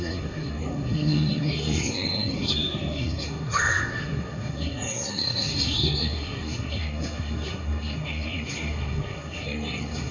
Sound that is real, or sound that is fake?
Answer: fake